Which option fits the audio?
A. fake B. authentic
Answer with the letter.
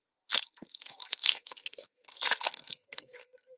A